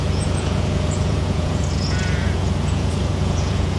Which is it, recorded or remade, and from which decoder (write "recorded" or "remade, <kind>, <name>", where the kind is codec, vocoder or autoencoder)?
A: remade, vocoder, Vocos